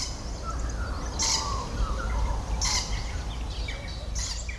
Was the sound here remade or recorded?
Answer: recorded